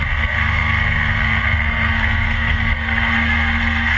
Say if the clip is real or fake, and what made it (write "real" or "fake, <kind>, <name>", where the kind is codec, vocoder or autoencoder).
fake, codec, SNAC